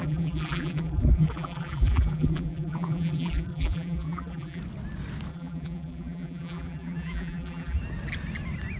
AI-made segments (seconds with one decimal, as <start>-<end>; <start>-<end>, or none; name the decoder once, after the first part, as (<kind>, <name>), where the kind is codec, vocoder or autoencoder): 0.0-4.6 (vocoder, BigVGAN v2); 5.3-7.8